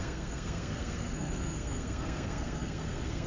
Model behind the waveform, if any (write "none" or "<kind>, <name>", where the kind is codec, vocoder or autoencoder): codec, SNAC